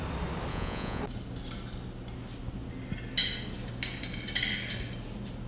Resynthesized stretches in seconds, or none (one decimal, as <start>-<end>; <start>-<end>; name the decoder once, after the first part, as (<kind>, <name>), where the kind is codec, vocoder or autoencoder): 0.5-1.0 (vocoder, Vocos)